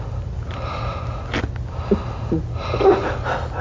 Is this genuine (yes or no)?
yes